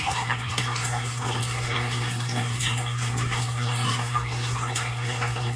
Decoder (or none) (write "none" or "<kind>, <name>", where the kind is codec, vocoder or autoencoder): codec, SNAC